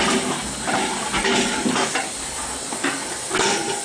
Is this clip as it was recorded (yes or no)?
yes